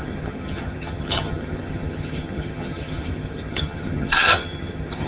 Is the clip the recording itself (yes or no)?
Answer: no